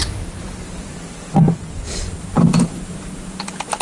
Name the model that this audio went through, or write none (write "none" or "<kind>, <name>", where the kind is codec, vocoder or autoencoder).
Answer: vocoder, BigVGAN v2